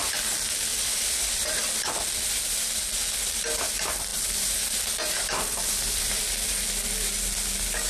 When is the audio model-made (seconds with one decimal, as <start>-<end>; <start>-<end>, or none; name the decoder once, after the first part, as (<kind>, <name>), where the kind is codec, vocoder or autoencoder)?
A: 0.7-1.9 (vocoder, BigVGAN v2); 4.1-6.2